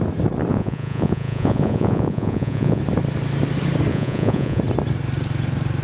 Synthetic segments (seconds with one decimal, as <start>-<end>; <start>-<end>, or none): 0.5-2.8; 3.9-4.6